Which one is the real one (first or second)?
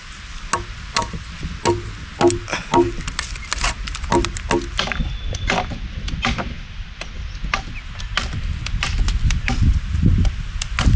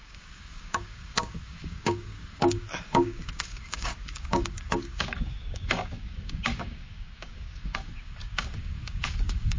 first